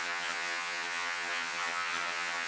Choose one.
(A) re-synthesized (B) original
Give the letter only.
A